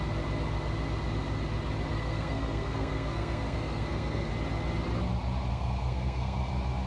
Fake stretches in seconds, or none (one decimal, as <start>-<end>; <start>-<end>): 1.9-4.3; 5.5-6.5